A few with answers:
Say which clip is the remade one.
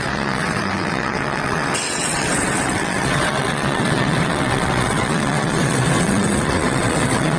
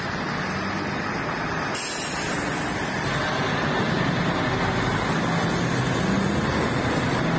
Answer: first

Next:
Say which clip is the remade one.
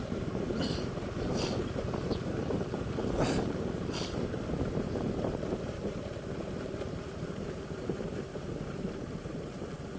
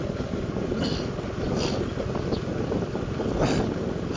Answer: first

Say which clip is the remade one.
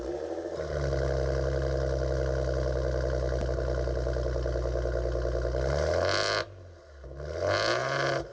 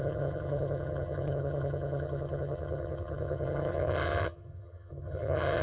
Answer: second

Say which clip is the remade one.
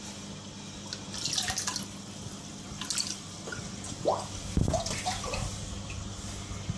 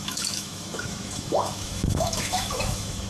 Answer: second